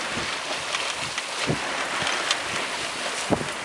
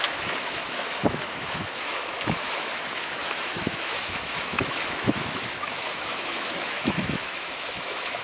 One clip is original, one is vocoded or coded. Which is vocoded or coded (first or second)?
second